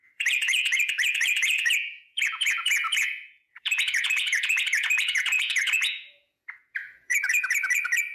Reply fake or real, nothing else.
fake